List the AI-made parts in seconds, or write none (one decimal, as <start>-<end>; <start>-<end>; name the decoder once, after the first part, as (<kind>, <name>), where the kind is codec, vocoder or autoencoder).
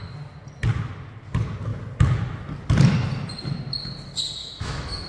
4.4-5.1 (autoencoder, DAC-VAE)